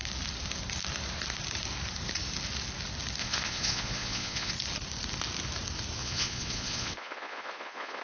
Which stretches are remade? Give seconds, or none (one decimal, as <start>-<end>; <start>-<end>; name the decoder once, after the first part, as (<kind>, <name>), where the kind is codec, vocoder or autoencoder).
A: 3.2-4.5 (vocoder, Vocos); 6.0-8.0